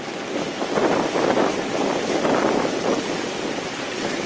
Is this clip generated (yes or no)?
no